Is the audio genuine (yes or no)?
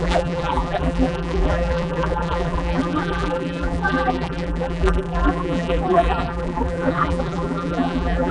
no